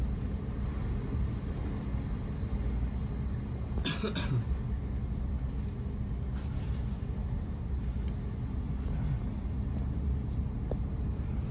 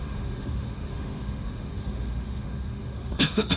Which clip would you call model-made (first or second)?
second